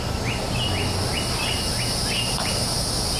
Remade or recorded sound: recorded